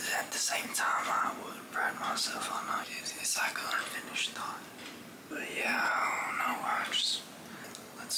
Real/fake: real